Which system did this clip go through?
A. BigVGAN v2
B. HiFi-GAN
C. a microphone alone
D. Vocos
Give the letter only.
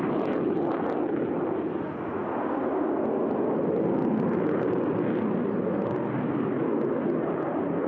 C